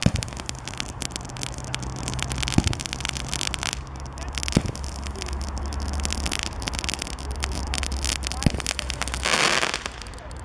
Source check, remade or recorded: recorded